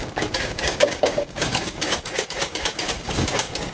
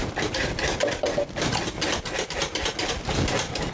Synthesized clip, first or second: first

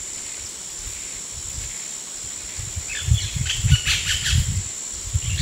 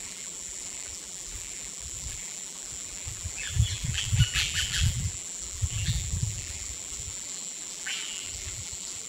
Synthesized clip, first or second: second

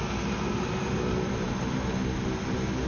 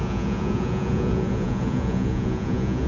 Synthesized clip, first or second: second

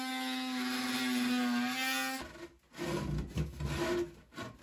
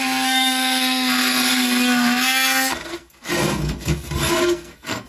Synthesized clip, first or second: second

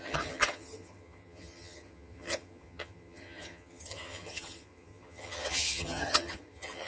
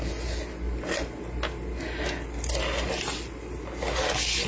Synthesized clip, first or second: first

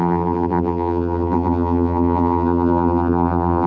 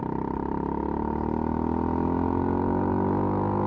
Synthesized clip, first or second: first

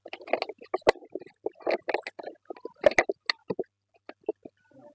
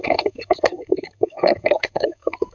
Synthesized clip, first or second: second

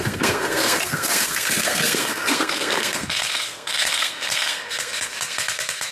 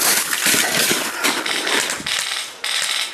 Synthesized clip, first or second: first